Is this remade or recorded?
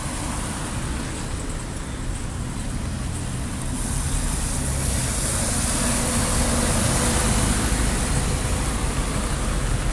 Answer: recorded